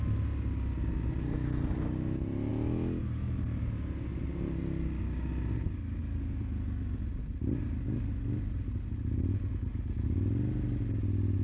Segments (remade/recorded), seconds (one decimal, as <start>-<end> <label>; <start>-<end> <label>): 0.0-11.4 recorded